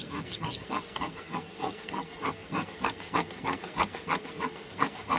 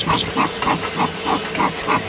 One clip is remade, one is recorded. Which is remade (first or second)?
first